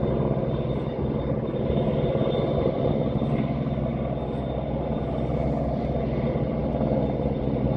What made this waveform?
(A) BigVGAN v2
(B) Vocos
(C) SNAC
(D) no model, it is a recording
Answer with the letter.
D